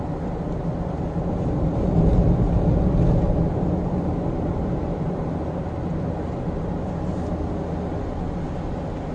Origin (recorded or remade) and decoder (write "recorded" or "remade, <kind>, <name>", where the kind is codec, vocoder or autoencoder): recorded